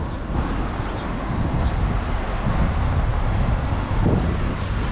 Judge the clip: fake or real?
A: real